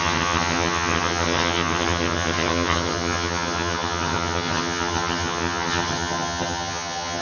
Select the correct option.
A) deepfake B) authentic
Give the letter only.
A